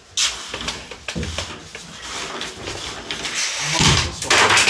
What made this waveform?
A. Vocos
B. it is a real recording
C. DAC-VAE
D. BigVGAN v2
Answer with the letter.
B